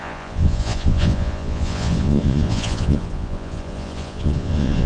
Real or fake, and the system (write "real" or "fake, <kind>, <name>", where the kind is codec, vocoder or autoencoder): fake, vocoder, Vocos